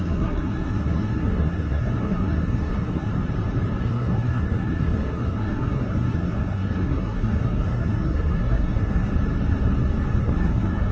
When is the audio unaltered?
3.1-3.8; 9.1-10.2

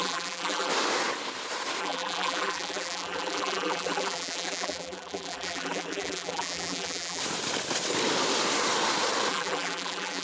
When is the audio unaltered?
0.7-1.8; 7.2-9.3

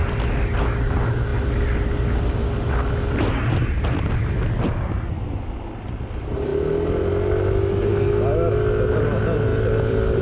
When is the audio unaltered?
0.0-9.5

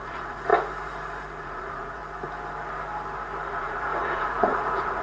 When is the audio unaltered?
0.5-1.4; 2.0-3.5

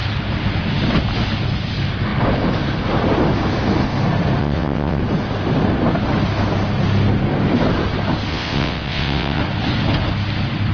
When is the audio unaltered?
0.0-4.4; 5.0-8.3; 9.4-10.7

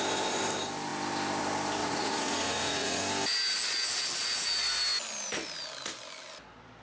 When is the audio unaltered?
0.0-1.8; 3.0-6.8

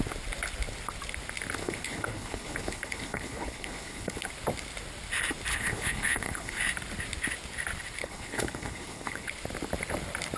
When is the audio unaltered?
0.0-1.6; 4.3-5.5; 6.6-8.0; 9.3-10.4